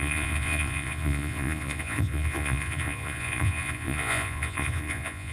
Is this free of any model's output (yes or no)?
no